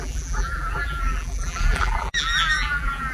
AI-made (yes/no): yes